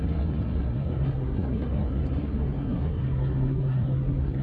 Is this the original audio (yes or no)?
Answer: no